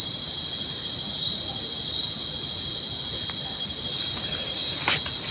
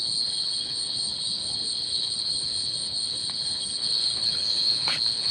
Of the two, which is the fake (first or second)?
second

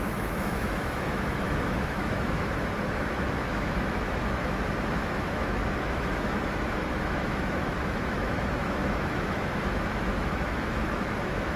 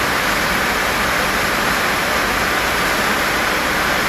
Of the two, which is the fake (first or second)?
first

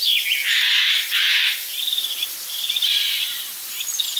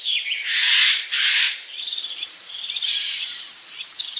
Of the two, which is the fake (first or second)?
second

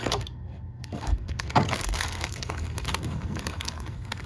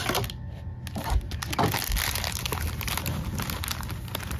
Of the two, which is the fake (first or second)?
first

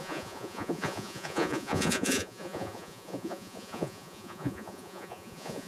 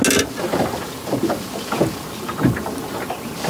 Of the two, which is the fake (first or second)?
first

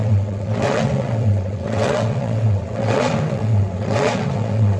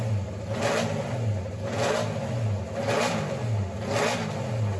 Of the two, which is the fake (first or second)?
first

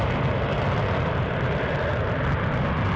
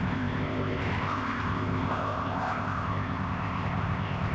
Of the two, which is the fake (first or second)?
second